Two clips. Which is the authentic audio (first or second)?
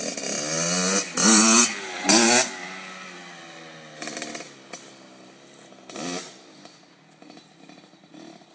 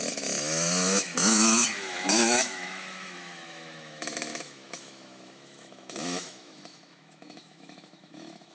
first